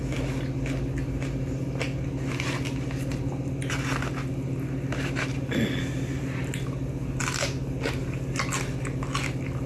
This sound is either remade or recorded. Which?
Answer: recorded